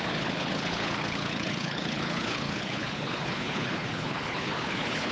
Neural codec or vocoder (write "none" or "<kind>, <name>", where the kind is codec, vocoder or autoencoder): codec, HILCodec